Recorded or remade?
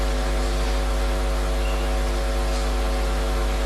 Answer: recorded